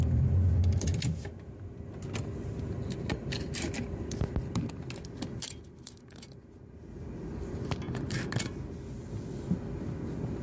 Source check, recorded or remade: recorded